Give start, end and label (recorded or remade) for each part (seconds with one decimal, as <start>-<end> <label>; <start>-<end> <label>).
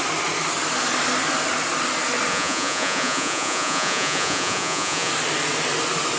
0.0-2.3 recorded; 2.3-5.1 remade; 5.1-6.2 recorded